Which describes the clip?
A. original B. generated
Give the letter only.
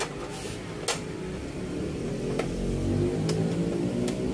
A